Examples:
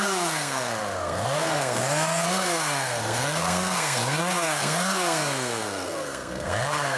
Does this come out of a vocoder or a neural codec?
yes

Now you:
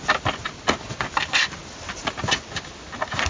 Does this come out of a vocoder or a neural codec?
no